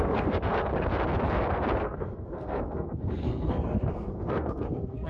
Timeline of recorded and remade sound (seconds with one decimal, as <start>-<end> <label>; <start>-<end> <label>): 0.0-0.7 remade; 0.7-1.8 recorded; 1.8-5.1 remade